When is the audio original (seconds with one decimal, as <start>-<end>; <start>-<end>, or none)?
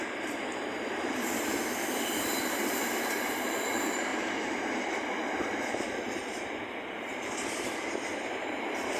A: 4.1-5.7